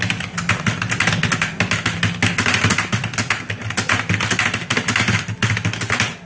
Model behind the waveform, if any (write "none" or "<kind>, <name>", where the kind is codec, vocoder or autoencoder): none